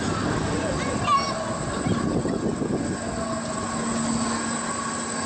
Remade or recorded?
recorded